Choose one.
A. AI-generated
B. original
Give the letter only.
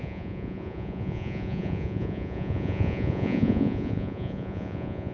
A